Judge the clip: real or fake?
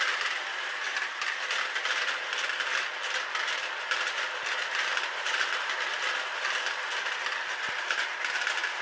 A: real